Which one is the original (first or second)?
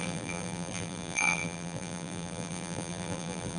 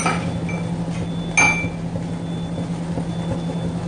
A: second